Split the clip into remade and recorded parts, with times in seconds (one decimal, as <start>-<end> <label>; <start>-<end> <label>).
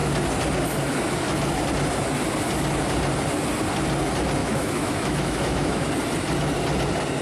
0.0-4.4 recorded; 4.4-5.9 remade; 5.9-7.2 recorded